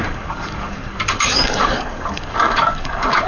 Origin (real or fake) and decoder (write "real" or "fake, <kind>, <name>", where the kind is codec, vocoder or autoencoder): fake, codec, DAC